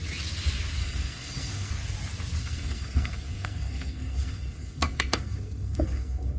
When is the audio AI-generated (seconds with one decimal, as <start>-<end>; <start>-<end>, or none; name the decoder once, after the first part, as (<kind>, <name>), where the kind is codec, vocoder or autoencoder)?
0.8-1.7 (codec, SNAC); 2.4-6.4